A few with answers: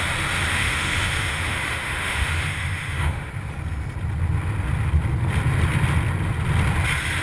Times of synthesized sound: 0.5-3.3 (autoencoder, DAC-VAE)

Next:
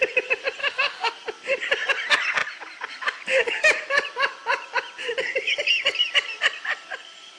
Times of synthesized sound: 0.6-1.1 (autoencoder, DAC-VAE)

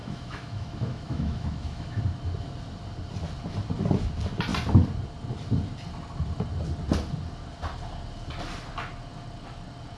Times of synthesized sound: 0.0-2.0 (autoencoder, DAC-VAE)

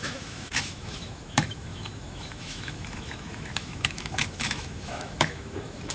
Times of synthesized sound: 0.0-5.9 (autoencoder, DAC-VAE)